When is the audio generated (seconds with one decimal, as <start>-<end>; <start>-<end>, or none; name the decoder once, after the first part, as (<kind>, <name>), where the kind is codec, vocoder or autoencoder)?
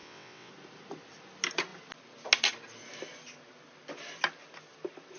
0.0-0.5 (vocoder, WaveNeXt)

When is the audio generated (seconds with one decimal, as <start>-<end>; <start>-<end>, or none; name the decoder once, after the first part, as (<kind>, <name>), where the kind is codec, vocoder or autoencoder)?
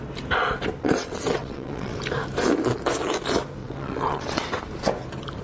0.8-2.0 (vocoder, WaveNeXt); 3.6-4.5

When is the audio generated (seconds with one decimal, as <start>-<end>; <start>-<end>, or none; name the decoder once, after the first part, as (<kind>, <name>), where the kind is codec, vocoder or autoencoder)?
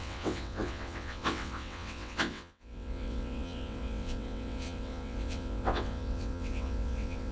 0.0-7.3 (vocoder, WaveNeXt)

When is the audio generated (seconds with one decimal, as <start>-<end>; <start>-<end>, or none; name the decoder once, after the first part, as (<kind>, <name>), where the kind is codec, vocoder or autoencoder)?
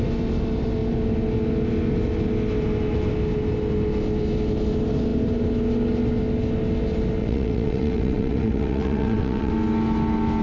7.2-9.5 (vocoder, WaveNeXt)